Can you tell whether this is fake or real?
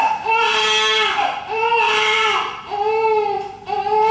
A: real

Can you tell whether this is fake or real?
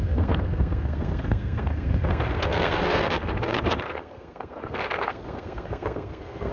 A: fake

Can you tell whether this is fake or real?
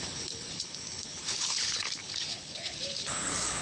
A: fake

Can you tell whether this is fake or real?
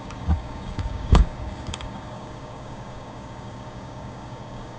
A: fake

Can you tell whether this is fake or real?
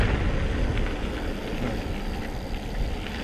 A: real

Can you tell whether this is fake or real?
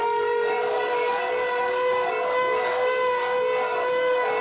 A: fake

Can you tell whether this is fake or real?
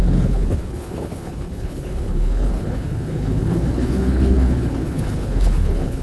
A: fake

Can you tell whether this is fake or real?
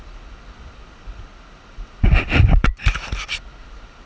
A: fake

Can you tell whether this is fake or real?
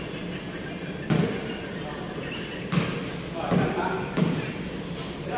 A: real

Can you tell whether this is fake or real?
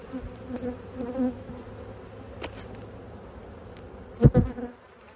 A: real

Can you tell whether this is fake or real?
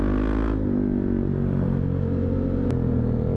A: real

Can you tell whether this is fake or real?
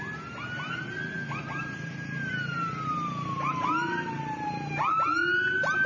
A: real